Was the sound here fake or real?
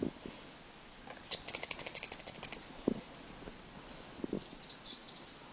real